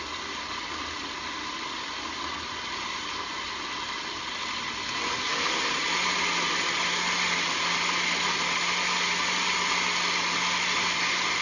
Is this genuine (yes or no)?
yes